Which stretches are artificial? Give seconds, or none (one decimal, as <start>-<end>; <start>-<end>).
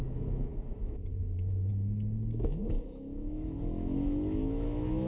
0.0-5.1